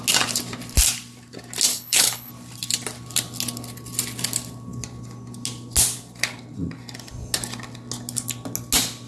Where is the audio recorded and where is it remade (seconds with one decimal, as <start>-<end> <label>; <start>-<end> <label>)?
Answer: 0.0-1.7 recorded; 1.7-2.3 remade; 2.3-9.1 recorded